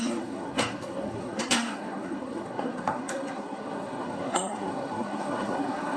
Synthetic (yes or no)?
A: yes